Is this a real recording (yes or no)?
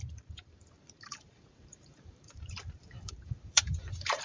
no